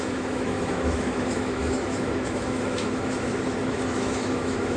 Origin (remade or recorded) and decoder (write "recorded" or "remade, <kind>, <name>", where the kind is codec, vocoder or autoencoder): remade, autoencoder, DAC-VAE